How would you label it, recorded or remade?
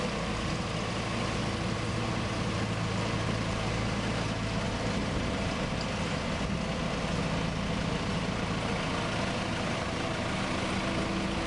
recorded